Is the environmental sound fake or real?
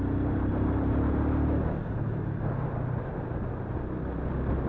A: real